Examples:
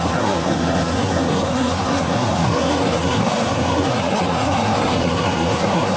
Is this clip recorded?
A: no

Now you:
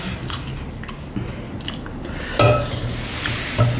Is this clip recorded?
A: yes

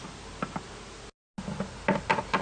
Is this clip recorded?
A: yes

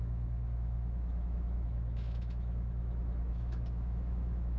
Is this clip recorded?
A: no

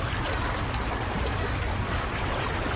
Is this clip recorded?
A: yes